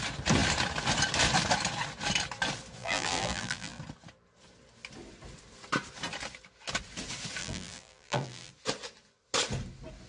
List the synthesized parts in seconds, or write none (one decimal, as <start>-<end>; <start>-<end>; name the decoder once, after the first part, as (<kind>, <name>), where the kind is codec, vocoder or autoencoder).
2.8-3.8 (vocoder, BigVGAN v2); 7.4-8.5